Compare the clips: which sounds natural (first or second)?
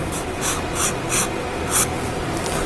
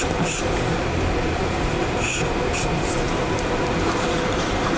first